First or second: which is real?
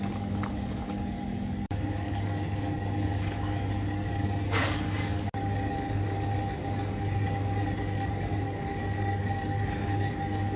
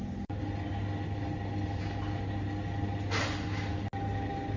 second